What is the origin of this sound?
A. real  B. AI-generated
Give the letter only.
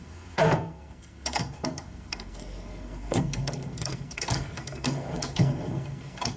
B